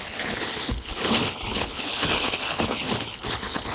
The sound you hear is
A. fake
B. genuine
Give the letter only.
A